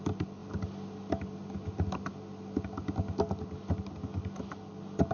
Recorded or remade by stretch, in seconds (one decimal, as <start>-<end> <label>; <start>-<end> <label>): 0.0-5.1 recorded